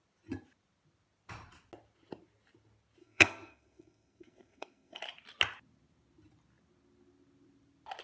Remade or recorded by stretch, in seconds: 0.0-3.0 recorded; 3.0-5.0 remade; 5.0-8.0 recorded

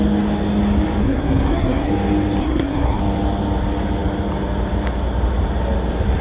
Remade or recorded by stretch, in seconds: 0.0-1.0 recorded; 1.0-1.9 remade; 1.9-2.4 recorded; 2.4-3.0 remade; 3.0-6.2 recorded

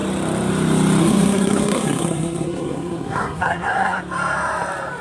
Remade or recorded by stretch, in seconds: 0.0-1.0 recorded; 1.0-4.0 remade; 4.0-5.0 recorded

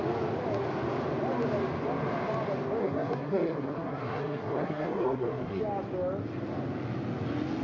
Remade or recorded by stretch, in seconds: 0.0-2.8 recorded; 2.8-5.6 remade; 5.6-7.6 recorded